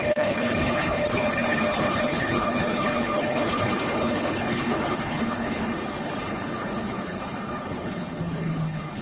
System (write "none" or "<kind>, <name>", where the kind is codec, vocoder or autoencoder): codec, HILCodec